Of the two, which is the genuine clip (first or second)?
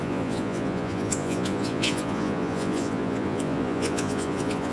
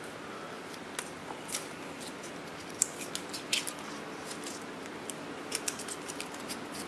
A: second